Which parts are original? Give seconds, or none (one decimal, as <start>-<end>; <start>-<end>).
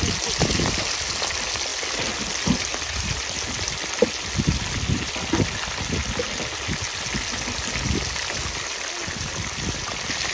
0.0-10.3